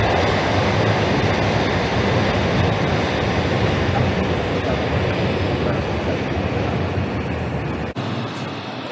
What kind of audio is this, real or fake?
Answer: real